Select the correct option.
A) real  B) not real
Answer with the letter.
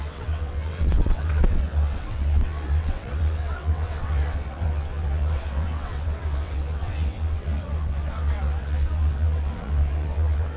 B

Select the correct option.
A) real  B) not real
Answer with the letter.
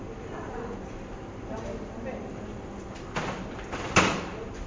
A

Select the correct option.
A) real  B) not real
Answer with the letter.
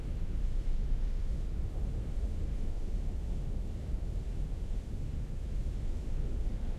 B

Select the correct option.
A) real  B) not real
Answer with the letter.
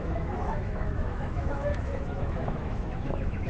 B